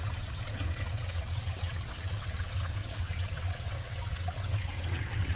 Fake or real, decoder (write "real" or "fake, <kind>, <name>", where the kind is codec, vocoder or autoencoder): fake, vocoder, WaveNeXt